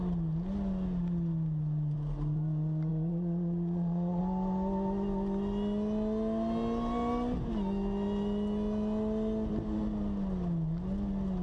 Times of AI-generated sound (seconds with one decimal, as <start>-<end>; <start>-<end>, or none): 2.9-4.2

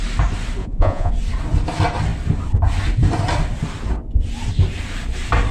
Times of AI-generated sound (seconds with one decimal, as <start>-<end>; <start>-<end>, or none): 0.6-1.1

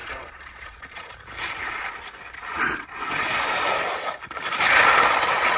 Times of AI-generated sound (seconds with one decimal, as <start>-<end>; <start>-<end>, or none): 0.0-1.1; 2.5-3.4

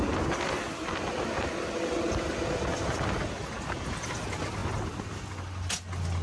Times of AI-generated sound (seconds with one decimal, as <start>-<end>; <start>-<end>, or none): none

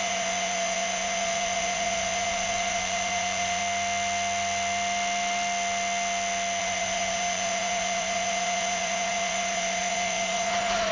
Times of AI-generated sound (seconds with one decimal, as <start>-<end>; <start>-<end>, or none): 0.0-3.6; 6.6-10.9

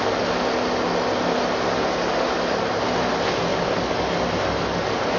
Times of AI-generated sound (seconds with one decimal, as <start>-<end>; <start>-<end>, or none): none

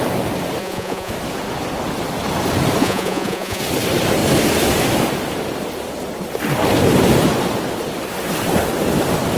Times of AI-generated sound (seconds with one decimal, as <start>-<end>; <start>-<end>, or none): 0.6-1.1; 2.8-3.6

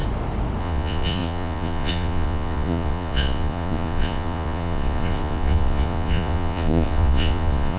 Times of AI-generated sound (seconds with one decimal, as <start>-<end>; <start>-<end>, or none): 0.6-7.8